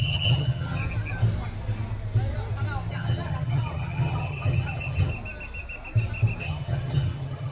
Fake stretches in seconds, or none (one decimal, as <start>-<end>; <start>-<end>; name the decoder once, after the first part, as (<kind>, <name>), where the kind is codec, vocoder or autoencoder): 0.0-0.8 (vocoder, HiFi-GAN); 2.9-5.1; 6.4-7.5